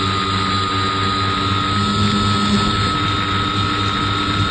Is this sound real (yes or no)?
yes